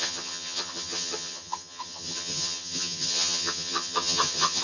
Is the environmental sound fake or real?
fake